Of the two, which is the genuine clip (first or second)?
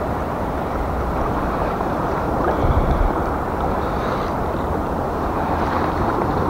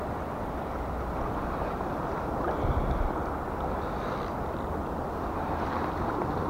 second